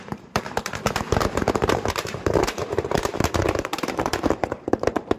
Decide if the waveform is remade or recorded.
remade